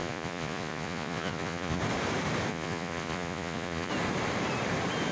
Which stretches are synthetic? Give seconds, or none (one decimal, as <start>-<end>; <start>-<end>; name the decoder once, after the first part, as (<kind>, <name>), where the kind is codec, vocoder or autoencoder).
0.0-1.8 (vocoder, Vocos); 2.5-3.9